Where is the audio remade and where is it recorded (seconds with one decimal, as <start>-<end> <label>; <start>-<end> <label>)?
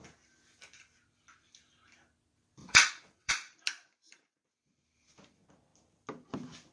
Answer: 0.0-2.6 recorded; 2.6-3.3 remade; 3.3-6.7 recorded